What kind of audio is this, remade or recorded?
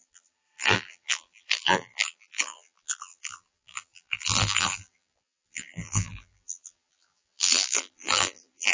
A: remade